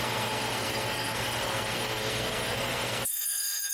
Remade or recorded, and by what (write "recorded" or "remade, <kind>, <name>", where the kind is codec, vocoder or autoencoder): remade, codec, SNAC